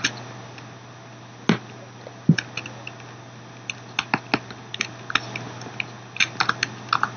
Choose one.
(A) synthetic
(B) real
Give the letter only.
B